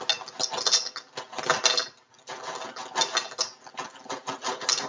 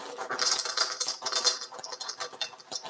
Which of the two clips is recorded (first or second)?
first